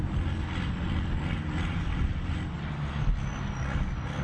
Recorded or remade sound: recorded